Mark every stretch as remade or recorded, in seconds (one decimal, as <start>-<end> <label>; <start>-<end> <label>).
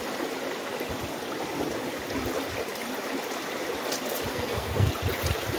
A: 0.0-4.3 recorded; 4.3-4.9 remade; 4.9-5.6 recorded